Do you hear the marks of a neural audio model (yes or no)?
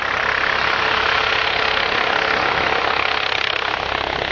no